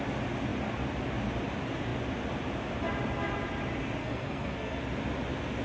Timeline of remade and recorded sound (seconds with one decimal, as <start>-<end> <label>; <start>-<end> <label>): 0.0-4.0 recorded; 4.0-4.8 remade; 4.8-5.6 recorded